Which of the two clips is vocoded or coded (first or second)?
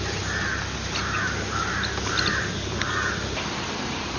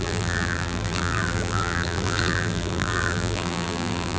second